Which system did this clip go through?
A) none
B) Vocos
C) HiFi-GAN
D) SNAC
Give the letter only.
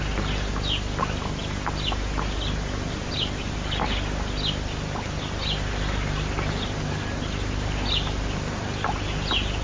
A